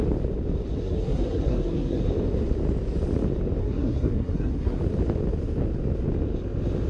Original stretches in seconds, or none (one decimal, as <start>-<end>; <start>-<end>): 0.0-0.8; 2.0-3.6; 4.8-6.9